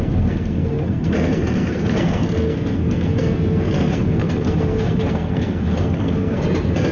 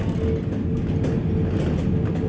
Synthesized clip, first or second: first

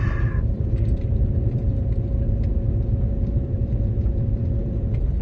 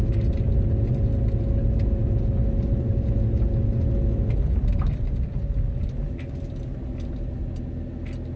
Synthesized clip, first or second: first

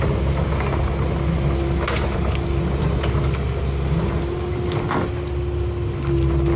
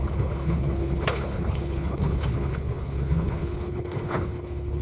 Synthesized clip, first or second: second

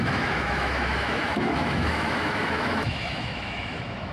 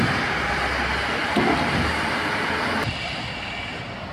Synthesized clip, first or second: first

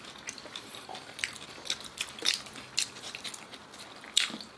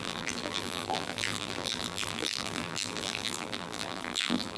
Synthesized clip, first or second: second